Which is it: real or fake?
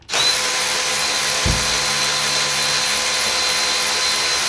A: real